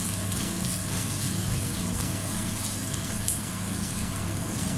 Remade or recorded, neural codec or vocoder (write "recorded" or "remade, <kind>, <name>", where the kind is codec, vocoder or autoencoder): remade, codec, SNAC